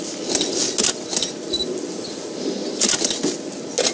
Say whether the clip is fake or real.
real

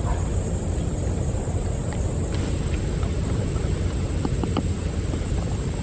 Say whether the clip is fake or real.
real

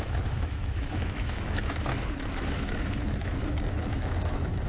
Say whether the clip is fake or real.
fake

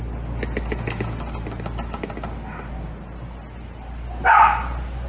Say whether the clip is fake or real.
real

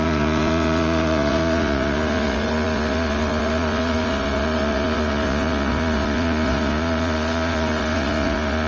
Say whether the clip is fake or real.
fake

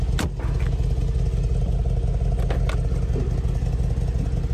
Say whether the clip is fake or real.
real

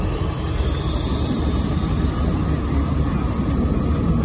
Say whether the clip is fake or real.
real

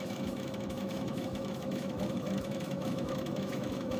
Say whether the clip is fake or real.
fake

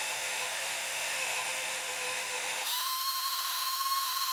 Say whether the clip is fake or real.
fake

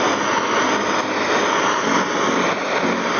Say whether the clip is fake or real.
real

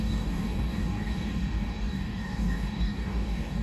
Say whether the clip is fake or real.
fake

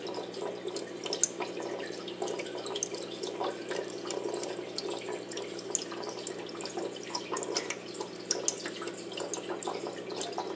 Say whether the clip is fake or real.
real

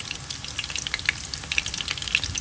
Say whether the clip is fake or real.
real